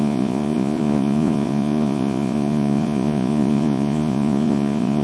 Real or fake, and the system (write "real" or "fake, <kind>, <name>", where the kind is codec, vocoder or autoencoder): fake, vocoder, Vocos